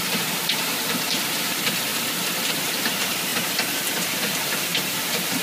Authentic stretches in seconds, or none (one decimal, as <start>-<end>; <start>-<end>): 1.9-2.5; 3.3-4.0